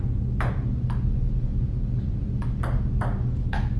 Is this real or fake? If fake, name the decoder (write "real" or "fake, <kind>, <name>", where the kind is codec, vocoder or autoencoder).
real